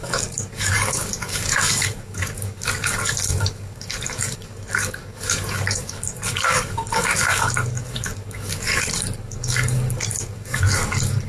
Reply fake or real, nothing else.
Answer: fake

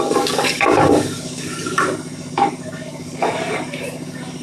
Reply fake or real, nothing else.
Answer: fake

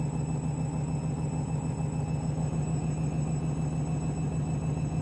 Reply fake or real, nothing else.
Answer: real